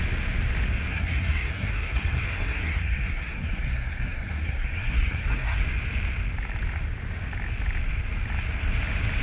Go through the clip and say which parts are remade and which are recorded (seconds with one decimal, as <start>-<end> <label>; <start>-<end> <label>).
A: 0.0-0.9 recorded; 0.9-5.6 remade; 5.6-9.2 recorded